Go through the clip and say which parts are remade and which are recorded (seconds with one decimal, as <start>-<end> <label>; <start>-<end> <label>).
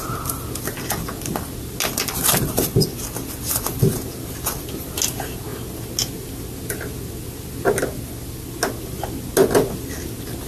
0.0-10.5 recorded